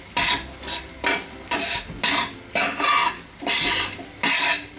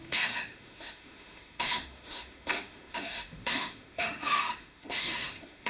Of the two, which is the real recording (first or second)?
first